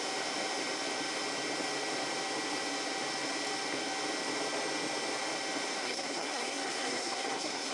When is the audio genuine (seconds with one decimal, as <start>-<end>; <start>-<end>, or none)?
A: 0.0-5.8